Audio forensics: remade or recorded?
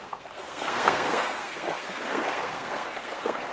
remade